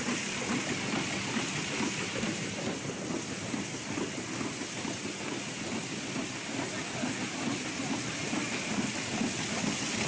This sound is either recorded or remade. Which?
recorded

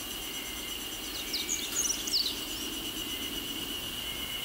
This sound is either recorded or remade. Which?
recorded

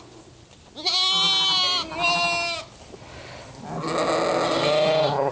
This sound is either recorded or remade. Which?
recorded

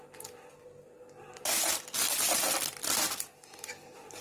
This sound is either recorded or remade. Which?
recorded